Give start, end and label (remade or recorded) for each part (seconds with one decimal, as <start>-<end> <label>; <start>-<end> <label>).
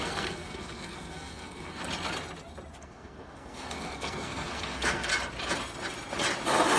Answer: 0.0-1.8 remade; 1.8-2.8 recorded; 2.8-5.1 remade; 5.1-6.8 recorded